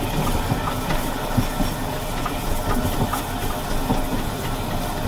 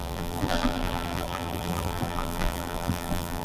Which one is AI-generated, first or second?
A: second